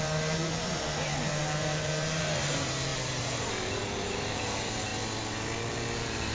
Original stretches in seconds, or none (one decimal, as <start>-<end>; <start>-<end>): 4.9-5.6